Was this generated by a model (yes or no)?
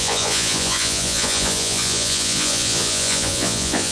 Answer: yes